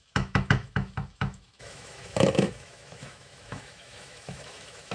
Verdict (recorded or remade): remade